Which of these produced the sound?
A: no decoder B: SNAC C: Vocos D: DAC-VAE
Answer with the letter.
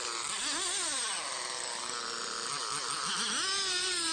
A